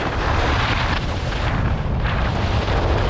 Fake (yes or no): yes